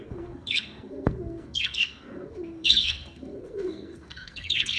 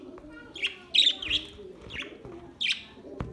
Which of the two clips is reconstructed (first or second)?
first